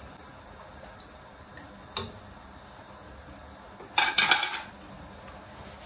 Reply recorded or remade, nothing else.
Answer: recorded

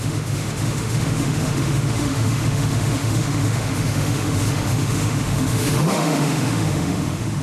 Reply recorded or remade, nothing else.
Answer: remade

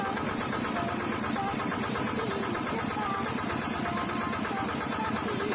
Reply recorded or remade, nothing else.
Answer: remade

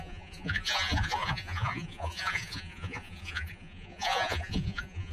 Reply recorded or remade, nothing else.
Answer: remade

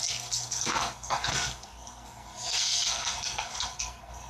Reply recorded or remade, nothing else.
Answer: remade